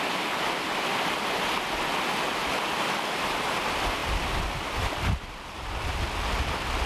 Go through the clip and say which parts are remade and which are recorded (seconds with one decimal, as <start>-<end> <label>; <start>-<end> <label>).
0.0-6.9 recorded